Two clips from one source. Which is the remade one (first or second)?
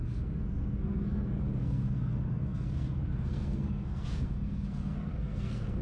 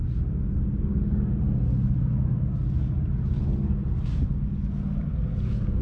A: first